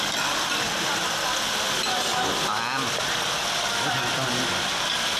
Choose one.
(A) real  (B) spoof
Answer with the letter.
A